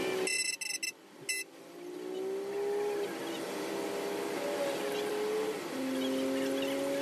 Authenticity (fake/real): real